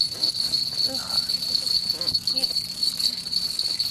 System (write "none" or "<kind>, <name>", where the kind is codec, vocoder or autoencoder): none